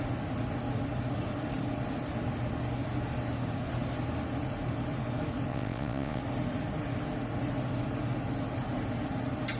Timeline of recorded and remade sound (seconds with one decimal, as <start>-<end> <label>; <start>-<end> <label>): 0.0-5.5 recorded; 5.5-6.2 remade; 6.2-9.6 recorded